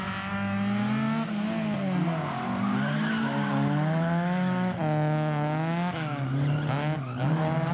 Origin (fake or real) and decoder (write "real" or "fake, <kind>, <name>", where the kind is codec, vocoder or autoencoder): real